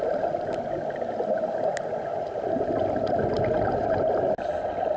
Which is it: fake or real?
real